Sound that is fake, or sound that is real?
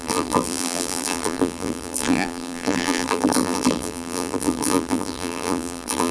fake